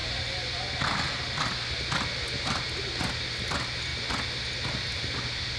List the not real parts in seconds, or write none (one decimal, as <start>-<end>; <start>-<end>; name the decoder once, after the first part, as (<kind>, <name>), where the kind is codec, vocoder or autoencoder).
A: none